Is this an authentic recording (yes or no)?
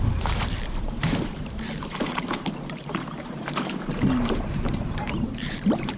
no